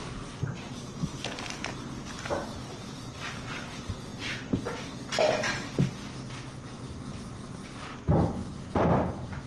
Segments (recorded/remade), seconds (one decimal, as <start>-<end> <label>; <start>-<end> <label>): 0.0-9.5 recorded